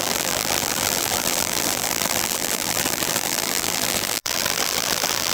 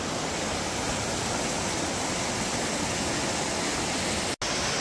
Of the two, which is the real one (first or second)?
second